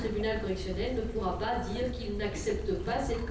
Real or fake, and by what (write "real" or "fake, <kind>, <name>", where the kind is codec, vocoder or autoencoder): real